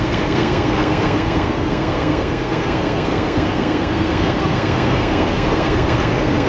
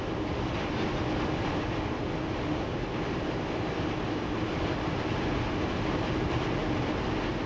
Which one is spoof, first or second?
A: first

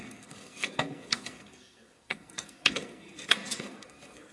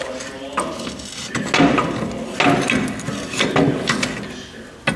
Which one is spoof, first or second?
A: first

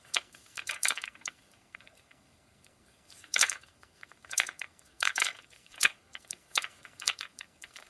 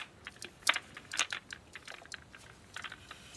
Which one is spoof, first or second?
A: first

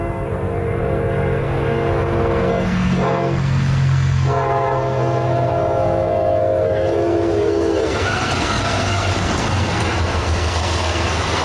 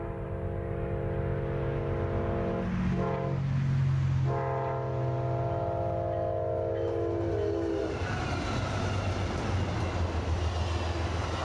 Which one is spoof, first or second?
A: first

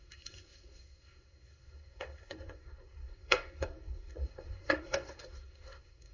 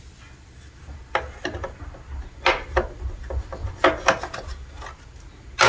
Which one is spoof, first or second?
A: first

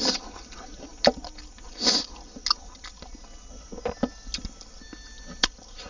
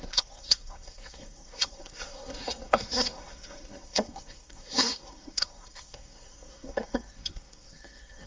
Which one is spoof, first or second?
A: second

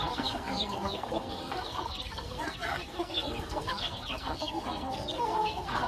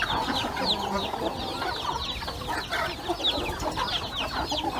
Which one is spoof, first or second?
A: first